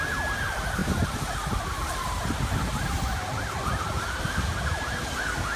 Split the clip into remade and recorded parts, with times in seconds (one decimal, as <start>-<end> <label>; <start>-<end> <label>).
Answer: 0.0-5.6 recorded